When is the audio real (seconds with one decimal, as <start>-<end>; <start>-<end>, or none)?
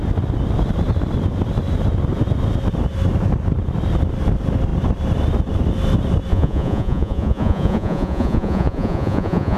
0.0-6.3